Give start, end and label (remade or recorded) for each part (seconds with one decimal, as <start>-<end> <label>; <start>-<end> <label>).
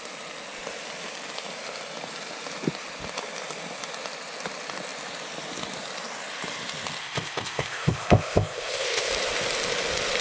0.0-7.0 recorded; 7.0-9.1 remade; 9.1-10.2 recorded